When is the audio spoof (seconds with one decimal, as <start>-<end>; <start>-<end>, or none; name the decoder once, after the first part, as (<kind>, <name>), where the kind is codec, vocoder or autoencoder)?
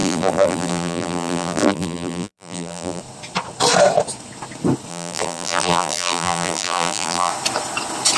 0.0-3.0 (vocoder, BigVGAN v2); 4.9-7.3